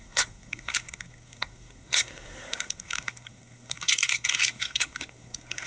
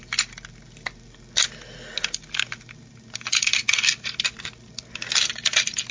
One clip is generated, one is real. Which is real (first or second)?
second